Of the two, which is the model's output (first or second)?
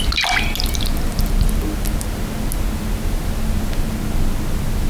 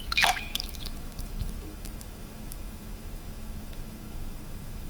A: second